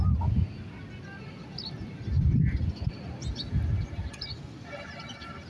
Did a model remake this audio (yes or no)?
no